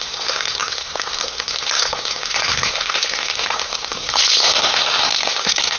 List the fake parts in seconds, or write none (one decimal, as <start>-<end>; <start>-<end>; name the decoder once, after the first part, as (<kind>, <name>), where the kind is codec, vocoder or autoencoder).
0.0-5.8 (codec, SNAC)